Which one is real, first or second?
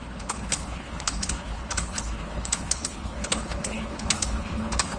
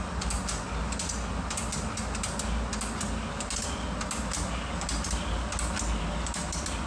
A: second